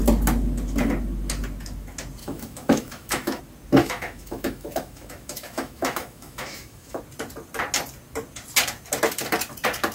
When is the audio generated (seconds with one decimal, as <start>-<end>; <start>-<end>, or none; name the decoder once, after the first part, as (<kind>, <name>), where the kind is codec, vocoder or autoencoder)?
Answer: 2.2-3.4 (autoencoder, DAC-VAE); 3.8-7.0